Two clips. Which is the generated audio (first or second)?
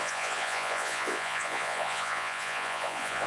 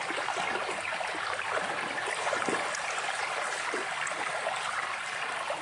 first